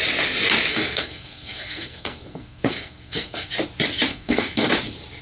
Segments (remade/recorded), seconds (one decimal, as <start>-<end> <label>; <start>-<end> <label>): 0.0-0.7 recorded; 0.7-3.5 remade; 3.5-4.1 recorded; 4.1-4.7 remade; 4.7-5.2 recorded